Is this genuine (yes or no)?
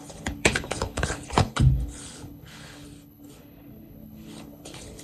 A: no